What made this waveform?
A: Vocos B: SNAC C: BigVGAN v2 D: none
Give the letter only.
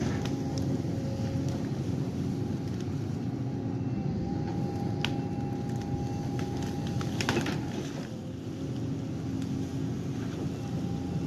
D